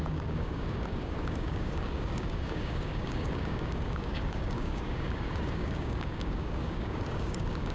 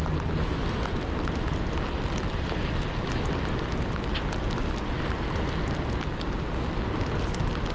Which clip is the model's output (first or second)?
first